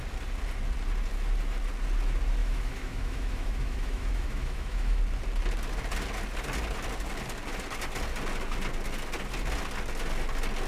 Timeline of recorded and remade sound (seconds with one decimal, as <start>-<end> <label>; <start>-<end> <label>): 0.0-2.4 recorded; 2.4-5.0 remade; 5.0-10.7 recorded